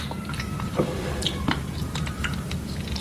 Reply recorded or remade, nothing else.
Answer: remade